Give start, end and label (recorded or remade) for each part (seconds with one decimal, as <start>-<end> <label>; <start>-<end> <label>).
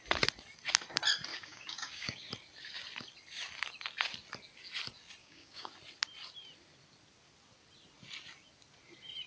0.0-1.3 recorded; 1.3-2.3 remade; 2.3-5.2 recorded; 5.2-5.7 remade; 5.7-9.3 recorded